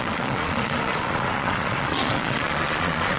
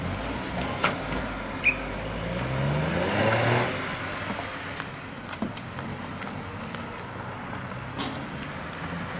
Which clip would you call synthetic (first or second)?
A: first